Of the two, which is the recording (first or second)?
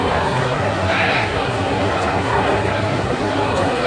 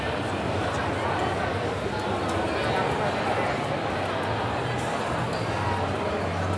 second